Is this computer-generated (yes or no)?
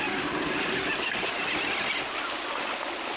no